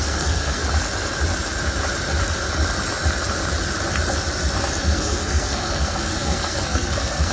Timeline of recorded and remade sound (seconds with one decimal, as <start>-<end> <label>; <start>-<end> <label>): 0.0-0.6 remade; 0.6-4.8 recorded; 4.8-7.3 remade